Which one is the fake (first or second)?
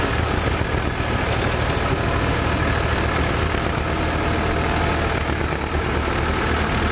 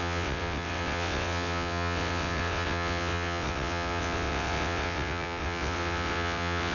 second